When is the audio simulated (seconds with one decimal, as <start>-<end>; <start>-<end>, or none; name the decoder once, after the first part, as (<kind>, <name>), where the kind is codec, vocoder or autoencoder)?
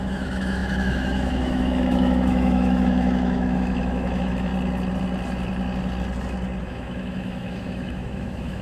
0.0-4.5 (autoencoder, DAC-VAE); 6.6-8.6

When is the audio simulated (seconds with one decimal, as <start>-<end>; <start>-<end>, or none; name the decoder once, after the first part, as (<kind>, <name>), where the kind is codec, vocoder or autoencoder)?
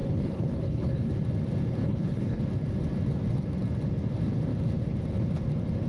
0.0-1.1 (codec, HILCodec); 1.8-2.4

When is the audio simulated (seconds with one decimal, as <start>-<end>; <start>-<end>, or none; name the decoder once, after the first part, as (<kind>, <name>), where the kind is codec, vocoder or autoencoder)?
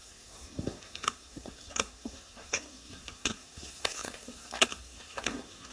0.0-5.7 (codec, SNAC)